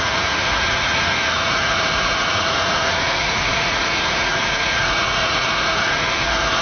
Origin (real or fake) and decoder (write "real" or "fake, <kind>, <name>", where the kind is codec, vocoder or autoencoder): fake, vocoder, Vocos